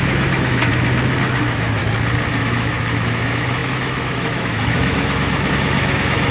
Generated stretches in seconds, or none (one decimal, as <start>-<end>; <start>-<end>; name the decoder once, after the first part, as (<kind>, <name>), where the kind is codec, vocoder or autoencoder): 0.0-0.7 (autoencoder, DAC-VAE); 1.4-1.8; 2.4-6.3